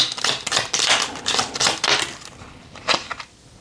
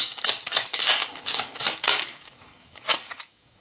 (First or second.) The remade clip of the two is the second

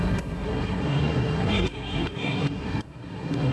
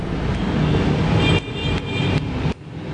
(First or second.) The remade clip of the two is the first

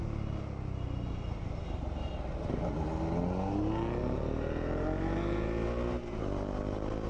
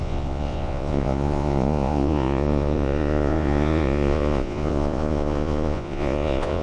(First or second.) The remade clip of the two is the second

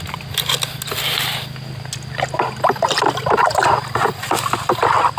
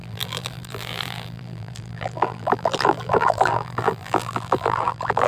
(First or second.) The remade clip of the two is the second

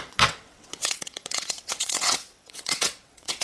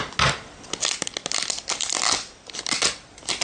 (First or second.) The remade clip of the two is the first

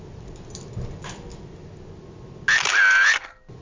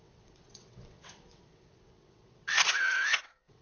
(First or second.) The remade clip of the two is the second